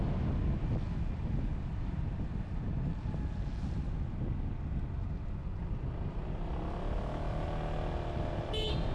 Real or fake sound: real